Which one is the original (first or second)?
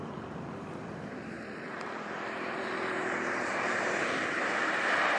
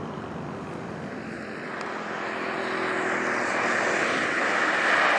second